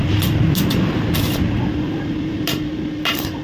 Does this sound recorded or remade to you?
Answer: remade